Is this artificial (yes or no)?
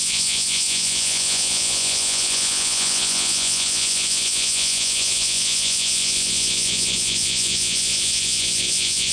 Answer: yes